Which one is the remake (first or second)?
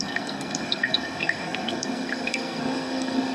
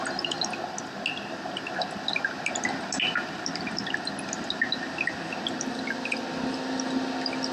first